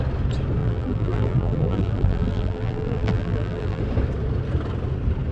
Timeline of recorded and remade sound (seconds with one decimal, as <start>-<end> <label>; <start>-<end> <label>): 0.0-0.6 recorded; 0.6-3.8 remade; 3.8-5.3 recorded